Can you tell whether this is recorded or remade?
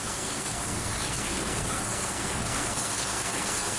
remade